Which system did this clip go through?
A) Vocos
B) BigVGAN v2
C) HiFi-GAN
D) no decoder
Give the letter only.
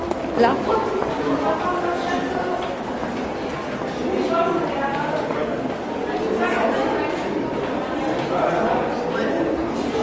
D